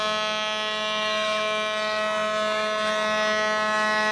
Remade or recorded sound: recorded